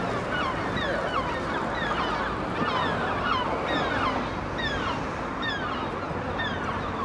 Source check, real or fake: real